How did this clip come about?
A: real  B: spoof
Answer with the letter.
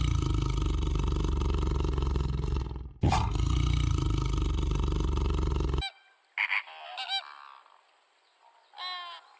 A